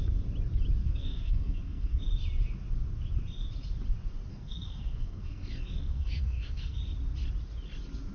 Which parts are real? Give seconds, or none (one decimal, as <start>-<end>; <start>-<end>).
0.0-0.8; 2.0-4.3; 6.8-8.1